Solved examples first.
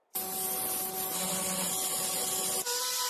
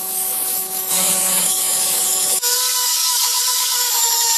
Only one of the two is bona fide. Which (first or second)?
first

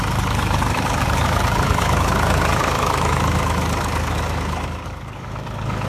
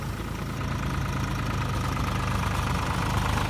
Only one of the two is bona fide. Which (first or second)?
second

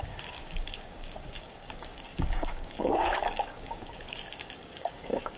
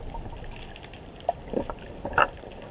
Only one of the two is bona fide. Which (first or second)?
second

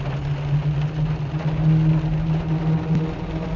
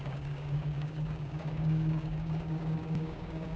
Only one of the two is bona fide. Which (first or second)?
first